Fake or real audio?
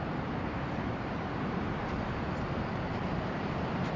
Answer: fake